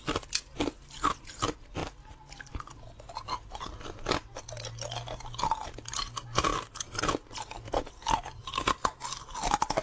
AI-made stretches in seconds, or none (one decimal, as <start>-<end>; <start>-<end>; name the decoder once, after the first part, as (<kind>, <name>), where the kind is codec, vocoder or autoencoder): none